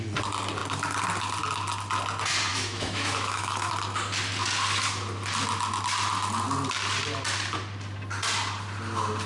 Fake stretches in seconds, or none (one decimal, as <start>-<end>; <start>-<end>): 2.5-3.7